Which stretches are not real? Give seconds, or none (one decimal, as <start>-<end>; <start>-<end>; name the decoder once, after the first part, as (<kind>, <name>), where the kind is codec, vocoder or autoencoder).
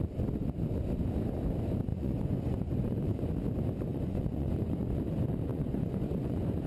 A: 1.9-3.3 (vocoder, Vocos); 3.9-5.0; 5.5-6.7